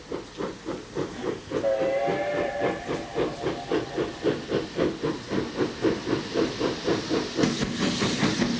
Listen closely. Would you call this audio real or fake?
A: real